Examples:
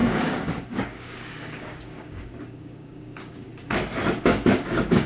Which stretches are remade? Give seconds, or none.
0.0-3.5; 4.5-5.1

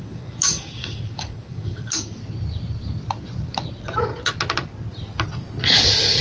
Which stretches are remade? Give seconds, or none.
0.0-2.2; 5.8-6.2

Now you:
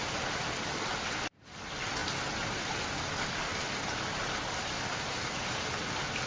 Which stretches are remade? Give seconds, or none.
none